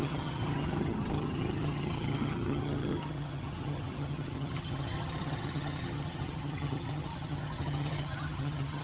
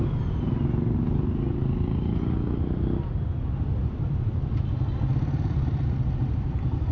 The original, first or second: second